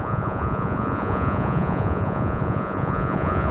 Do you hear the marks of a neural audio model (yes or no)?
yes